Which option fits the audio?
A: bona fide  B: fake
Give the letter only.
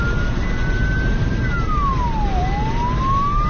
A